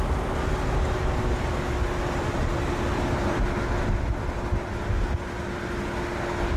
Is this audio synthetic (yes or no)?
no